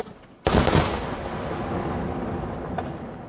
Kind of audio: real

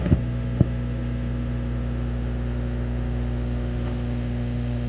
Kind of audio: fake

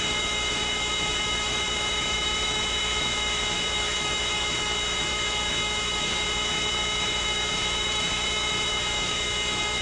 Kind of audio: fake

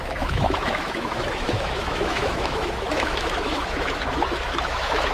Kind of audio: fake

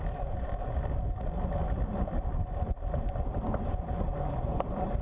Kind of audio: real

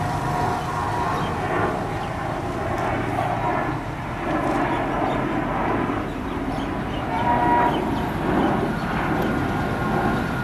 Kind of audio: real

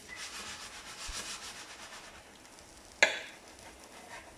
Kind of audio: real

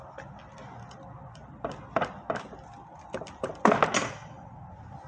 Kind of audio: real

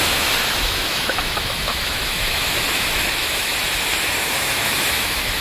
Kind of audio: fake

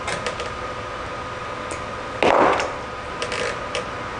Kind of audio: real